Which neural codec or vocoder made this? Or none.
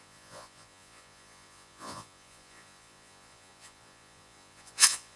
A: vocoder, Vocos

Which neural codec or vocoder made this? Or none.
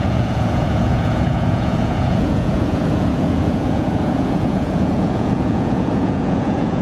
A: vocoder, Vocos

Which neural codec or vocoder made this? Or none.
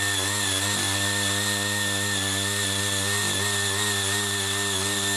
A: none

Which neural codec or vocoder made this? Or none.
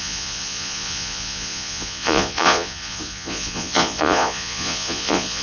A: vocoder, Vocos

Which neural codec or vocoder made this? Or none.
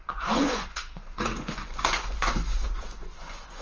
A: vocoder, Vocos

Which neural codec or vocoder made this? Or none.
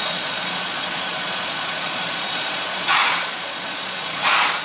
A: vocoder, Vocos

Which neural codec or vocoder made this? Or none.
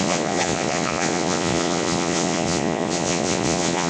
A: vocoder, Vocos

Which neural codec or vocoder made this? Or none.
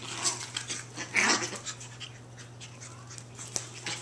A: none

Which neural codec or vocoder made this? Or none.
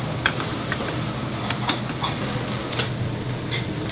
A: none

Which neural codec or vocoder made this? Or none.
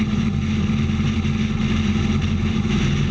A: none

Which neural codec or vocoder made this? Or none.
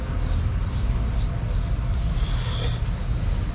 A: none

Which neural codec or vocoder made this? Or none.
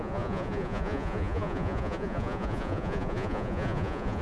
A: vocoder, Vocos